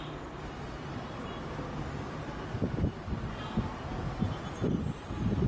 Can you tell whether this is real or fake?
real